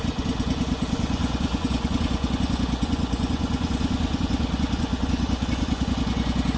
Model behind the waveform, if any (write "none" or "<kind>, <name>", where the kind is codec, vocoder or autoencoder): vocoder, Vocos